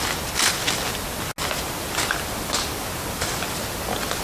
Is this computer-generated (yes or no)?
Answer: no